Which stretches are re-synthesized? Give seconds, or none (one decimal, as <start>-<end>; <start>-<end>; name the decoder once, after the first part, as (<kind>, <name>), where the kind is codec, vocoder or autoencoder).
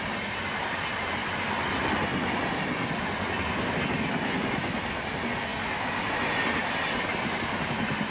none